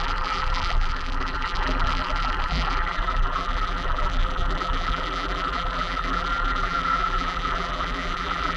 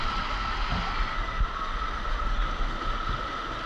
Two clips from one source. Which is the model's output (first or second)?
first